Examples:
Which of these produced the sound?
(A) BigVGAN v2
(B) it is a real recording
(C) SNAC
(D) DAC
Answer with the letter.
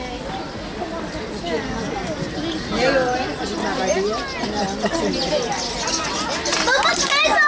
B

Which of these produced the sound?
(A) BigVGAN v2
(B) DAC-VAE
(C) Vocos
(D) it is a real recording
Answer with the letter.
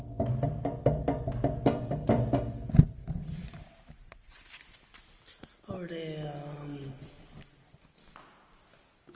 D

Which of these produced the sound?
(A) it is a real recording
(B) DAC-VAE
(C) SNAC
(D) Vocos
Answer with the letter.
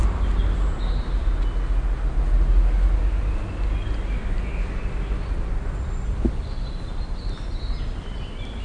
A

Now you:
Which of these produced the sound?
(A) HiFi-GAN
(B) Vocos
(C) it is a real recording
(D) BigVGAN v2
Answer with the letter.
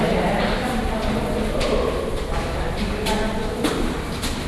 D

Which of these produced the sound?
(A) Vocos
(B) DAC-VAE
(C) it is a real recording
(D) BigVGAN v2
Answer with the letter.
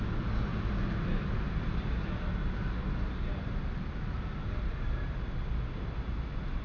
C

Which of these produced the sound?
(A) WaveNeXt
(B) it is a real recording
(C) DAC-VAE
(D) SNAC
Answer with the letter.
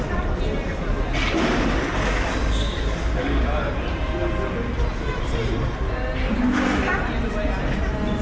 B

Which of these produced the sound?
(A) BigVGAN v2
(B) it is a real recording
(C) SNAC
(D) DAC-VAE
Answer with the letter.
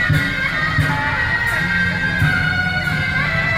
B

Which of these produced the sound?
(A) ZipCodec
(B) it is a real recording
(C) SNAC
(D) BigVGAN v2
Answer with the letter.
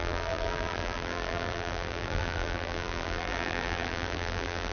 D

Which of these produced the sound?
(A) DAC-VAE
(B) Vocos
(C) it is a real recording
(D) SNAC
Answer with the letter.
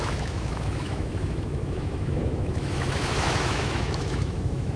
A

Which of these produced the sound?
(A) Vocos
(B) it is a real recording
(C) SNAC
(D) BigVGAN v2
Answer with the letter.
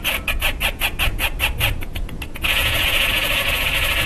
A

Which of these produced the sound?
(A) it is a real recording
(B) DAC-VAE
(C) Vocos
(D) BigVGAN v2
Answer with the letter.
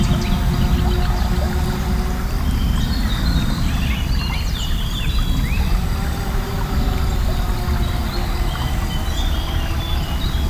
A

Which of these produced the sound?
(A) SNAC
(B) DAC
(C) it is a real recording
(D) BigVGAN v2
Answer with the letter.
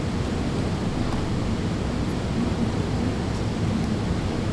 C